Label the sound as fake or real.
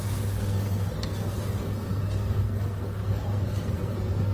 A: fake